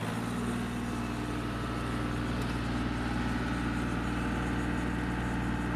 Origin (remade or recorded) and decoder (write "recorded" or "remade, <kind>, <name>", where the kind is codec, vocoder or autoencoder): recorded